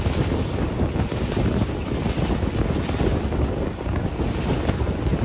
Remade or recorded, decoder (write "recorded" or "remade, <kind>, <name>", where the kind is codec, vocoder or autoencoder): recorded